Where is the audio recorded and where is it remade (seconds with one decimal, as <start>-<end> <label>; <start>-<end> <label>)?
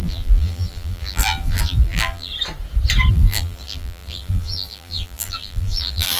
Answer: 0.0-2.3 remade; 2.3-3.1 recorded; 3.1-6.2 remade